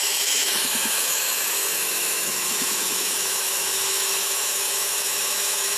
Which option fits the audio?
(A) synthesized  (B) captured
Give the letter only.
A